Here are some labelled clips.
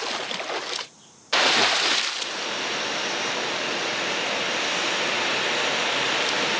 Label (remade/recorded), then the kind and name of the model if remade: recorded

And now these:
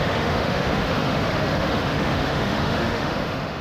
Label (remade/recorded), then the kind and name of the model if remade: remade, autoencoder, DAC-VAE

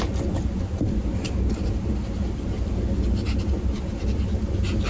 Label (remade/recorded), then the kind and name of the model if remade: recorded